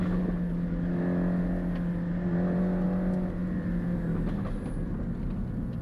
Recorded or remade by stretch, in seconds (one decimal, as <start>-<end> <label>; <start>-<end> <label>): 0.0-5.8 recorded